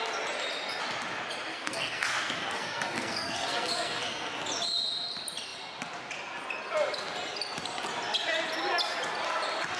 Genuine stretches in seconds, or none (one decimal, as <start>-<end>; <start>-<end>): 0.0-1.5; 4.3-9.8